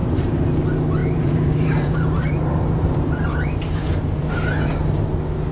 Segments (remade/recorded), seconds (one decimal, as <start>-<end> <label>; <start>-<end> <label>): 0.0-0.5 remade; 0.5-1.0 recorded; 1.0-4.3 remade; 4.3-5.5 recorded